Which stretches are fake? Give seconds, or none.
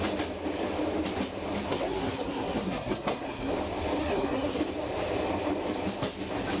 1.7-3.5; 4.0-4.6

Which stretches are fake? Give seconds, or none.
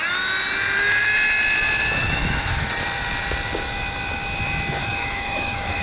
2.0-2.7; 4.8-5.8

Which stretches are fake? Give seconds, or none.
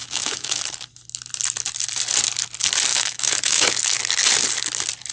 0.0-0.6; 2.9-4.0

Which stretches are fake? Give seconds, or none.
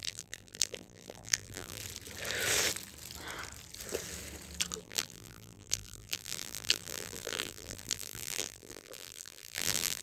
0.0-1.8; 4.8-10.0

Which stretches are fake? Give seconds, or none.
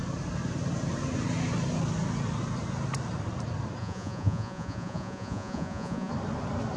3.8-6.1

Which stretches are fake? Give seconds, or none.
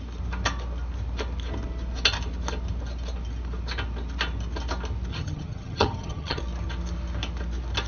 5.1-6.4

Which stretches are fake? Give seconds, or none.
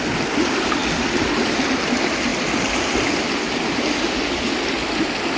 none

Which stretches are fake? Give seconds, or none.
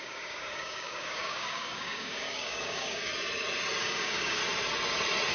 0.0-3.1; 3.8-4.4